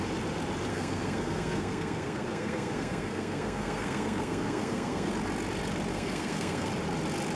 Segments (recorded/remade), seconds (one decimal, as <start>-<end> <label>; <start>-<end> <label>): 0.0-0.7 recorded; 0.7-5.1 remade; 5.1-5.9 recorded; 5.9-6.7 remade; 6.7-7.4 recorded